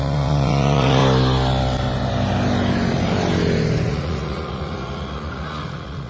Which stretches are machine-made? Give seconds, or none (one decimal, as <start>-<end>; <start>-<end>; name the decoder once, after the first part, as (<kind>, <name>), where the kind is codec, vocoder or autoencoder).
0.0-1.0 (vocoder, Vocos); 3.9-6.1